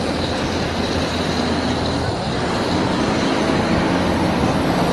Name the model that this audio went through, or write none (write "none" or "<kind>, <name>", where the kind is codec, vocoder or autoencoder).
none